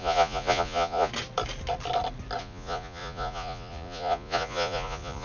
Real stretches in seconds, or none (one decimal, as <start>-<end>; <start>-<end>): 1.1-2.4